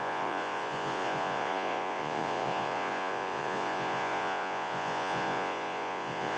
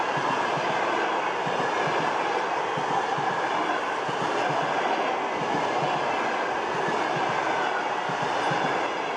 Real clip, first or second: second